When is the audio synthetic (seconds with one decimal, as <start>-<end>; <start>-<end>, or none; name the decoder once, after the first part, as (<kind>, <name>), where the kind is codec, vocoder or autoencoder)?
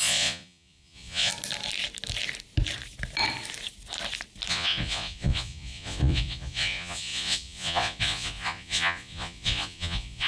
0.0-1.3 (vocoder, Vocos); 4.5-10.3